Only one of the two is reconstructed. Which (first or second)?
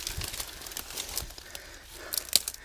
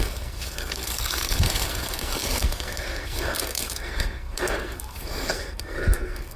second